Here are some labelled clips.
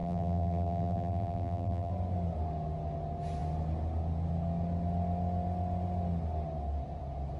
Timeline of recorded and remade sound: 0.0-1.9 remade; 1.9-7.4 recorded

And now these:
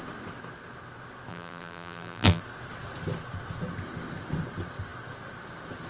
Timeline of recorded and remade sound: 0.0-1.3 recorded; 1.3-2.4 remade; 2.4-5.9 recorded

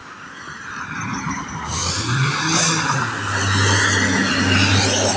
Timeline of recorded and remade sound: 0.0-0.7 remade; 0.7-1.8 recorded; 1.8-3.0 remade; 3.0-5.2 recorded

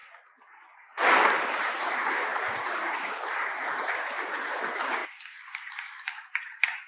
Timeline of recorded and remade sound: 0.0-1.7 recorded; 1.7-5.0 remade; 5.0-5.6 recorded; 5.6-6.9 remade